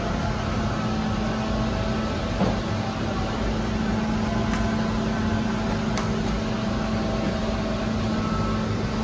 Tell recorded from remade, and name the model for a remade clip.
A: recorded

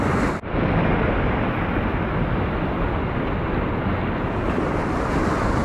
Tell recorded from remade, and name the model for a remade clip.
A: recorded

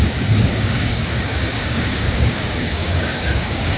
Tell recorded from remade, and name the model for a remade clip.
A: remade, codec, DAC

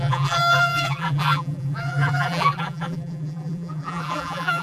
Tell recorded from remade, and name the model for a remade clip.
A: remade, vocoder, BigVGAN v2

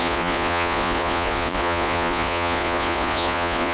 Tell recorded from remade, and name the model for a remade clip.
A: remade, vocoder, Vocos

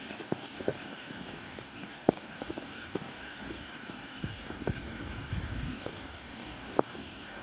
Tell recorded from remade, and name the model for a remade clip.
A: remade, codec, DAC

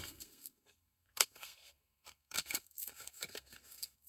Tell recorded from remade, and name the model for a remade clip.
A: remade, codec, SNAC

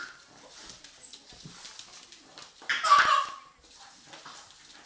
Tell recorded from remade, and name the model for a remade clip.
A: recorded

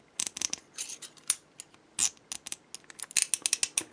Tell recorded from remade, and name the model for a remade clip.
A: recorded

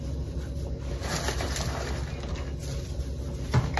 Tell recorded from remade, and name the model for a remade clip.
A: recorded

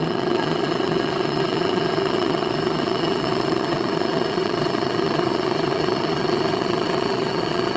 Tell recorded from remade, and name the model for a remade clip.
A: remade, vocoder, Vocos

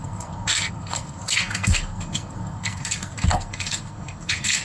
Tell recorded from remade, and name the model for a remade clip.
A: remade, codec, SNAC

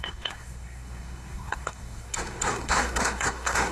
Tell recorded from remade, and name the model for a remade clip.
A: remade, codec, SNAC